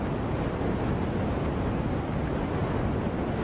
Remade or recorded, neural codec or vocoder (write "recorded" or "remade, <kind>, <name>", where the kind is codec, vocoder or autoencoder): recorded